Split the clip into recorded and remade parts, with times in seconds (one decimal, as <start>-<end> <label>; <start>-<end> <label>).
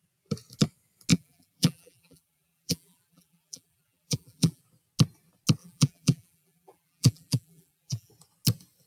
0.0-1.1 recorded; 1.1-4.6 remade; 4.6-5.6 recorded; 5.6-8.1 remade; 8.1-8.9 recorded